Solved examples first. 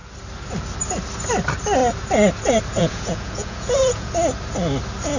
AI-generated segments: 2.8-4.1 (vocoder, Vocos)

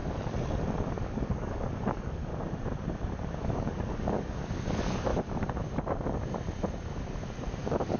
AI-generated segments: 0.9-2.3 (codec, DAC); 3.4-5.1; 7.6-8.0

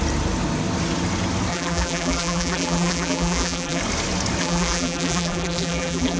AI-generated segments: 1.5-3.8 (vocoder, BigVGAN v2); 4.4-6.2

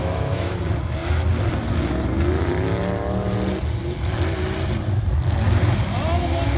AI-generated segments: 0.0-0.6 (autoencoder, DAC-VAE)

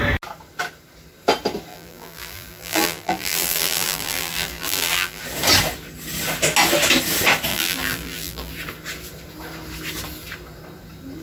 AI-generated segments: 1.7-5.2 (vocoder, BigVGAN v2); 7.5-8.5